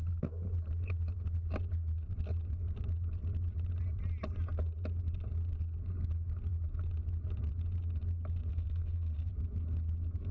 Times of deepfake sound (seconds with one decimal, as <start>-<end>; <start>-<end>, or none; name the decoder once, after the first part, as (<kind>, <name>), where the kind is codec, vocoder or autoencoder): 8.5-9.3 (codec, SNAC)